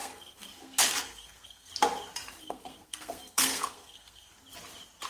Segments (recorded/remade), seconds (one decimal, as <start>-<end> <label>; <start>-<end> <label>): 0.0-1.7 remade; 1.7-2.4 recorded; 2.4-4.3 remade; 4.3-5.1 recorded